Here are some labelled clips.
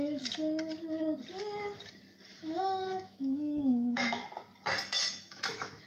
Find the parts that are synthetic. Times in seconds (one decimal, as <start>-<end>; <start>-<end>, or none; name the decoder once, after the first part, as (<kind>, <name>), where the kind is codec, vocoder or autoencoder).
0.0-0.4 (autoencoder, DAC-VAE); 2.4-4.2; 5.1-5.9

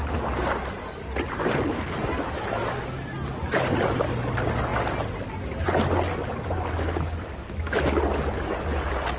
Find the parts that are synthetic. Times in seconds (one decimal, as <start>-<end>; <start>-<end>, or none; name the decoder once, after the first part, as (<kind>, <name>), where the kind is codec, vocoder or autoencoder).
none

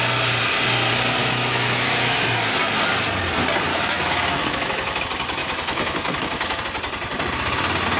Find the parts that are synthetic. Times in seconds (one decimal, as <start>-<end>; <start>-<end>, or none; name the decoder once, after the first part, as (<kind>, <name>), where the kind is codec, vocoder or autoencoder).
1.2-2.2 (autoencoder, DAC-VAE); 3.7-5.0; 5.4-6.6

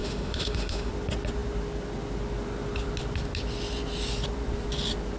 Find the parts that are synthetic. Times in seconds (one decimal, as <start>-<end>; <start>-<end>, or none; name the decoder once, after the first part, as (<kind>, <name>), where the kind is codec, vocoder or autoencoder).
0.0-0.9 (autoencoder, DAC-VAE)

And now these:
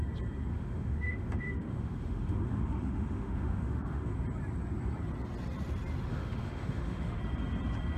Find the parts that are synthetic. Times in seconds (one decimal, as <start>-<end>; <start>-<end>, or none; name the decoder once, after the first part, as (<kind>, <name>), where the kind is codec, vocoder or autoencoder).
0.5-4.1 (autoencoder, DAC-VAE); 6.1-7.2

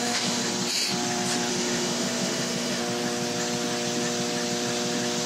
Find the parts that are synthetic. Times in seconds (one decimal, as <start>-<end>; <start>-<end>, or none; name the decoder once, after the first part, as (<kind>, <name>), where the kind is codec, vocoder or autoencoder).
0.0-0.5 (autoencoder, DAC-VAE); 1.5-2.8